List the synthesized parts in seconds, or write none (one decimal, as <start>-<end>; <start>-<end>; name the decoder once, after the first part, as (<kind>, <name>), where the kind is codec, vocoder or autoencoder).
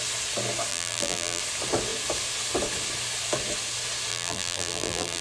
0.7-1.4 (vocoder, BigVGAN v2); 4.1-5.2